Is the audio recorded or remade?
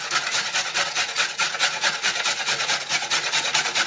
remade